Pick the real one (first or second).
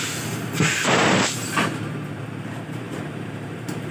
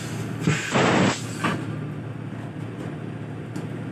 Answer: second